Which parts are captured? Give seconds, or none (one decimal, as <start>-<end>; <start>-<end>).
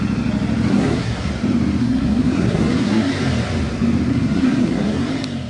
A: 0.0-0.7; 1.3-1.8; 3.1-4.1; 5.0-5.5